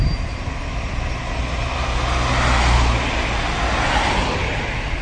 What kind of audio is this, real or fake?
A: real